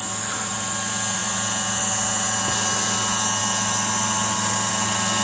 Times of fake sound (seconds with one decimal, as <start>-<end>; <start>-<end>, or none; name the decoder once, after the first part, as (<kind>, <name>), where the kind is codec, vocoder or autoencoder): none